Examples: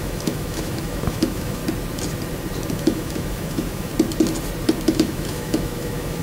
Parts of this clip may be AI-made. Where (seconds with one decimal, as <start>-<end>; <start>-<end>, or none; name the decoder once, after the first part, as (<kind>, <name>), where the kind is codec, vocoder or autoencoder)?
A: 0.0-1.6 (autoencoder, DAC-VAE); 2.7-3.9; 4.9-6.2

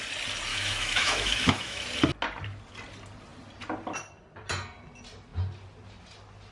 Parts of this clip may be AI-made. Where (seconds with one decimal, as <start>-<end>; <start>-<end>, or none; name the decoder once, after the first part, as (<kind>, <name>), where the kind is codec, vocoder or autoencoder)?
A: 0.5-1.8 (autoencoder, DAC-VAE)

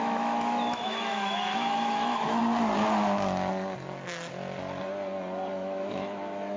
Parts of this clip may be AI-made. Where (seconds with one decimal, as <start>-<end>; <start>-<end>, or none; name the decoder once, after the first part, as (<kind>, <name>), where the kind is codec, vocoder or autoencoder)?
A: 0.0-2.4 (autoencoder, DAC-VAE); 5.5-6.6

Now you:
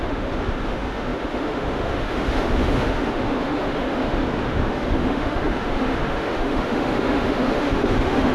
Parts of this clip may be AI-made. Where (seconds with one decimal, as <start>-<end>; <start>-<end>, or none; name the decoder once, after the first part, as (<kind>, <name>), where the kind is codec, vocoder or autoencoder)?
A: 0.0-8.3 (autoencoder, DAC-VAE)

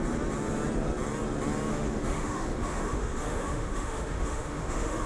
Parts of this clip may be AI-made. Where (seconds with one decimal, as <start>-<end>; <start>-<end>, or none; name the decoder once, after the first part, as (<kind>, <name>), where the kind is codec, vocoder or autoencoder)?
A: 1.7-5.1 (autoencoder, DAC-VAE)

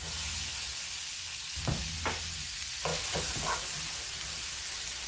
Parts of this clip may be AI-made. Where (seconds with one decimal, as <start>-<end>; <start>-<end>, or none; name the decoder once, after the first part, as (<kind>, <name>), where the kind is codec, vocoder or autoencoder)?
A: none

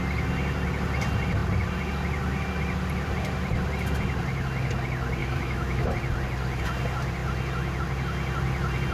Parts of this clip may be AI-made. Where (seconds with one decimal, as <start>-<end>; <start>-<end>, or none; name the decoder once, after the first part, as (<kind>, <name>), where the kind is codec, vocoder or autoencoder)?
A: 5.2-5.9 (autoencoder, DAC-VAE)

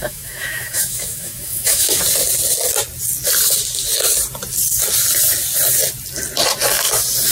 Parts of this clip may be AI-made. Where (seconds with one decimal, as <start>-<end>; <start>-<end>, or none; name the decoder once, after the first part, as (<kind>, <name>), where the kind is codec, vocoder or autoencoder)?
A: 0.0-2.0 (autoencoder, DAC-VAE)